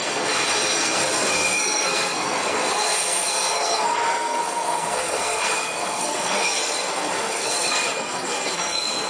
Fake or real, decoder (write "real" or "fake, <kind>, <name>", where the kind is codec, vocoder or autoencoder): fake, codec, SNAC